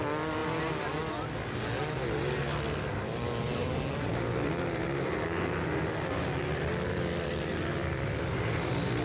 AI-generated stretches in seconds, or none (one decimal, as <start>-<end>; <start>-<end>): none